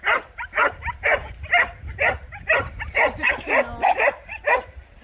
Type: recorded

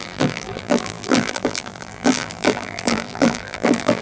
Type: remade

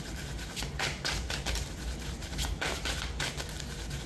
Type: recorded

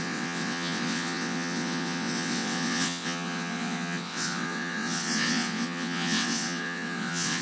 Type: remade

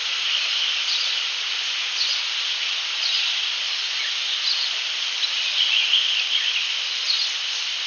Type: recorded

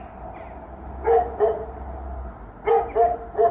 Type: recorded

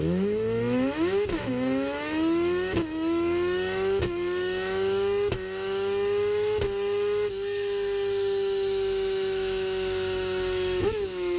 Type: remade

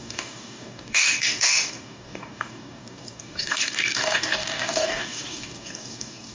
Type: remade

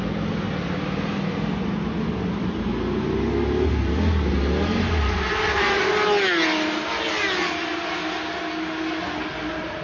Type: recorded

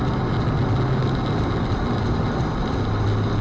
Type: recorded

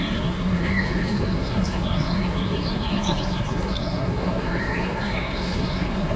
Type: remade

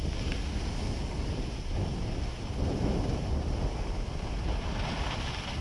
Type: recorded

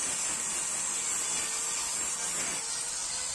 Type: recorded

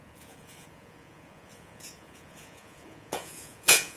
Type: remade